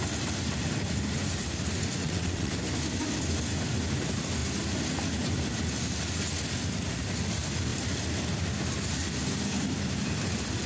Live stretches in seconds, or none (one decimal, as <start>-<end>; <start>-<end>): 0.0-2.0; 2.5-10.7